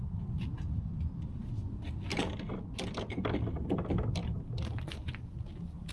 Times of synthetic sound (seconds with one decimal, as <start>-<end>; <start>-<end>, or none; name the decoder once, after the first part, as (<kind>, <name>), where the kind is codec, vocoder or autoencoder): none

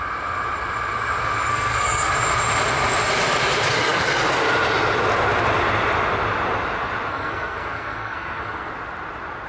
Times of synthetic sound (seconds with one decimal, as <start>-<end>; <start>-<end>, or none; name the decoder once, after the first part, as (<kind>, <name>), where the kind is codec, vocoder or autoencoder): 1.5-2.1 (codec, SNAC); 7.1-8.7

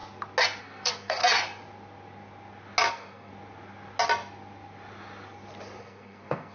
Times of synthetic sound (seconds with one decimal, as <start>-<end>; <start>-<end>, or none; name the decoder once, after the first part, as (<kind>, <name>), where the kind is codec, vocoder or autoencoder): 0.6-1.2 (codec, SNAC); 2.9-3.3; 5.8-6.5

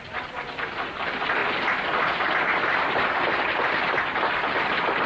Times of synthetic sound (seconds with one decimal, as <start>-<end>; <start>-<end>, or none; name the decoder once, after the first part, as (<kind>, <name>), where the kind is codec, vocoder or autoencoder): none

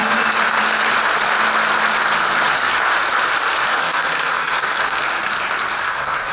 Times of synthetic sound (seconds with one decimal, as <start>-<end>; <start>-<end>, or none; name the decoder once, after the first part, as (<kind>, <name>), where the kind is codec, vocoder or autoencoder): 3.8-5.0 (codec, SNAC); 5.8-6.3

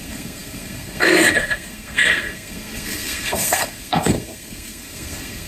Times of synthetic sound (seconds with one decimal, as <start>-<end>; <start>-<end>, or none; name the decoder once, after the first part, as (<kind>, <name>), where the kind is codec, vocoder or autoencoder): 0.0-5.5 (codec, SNAC)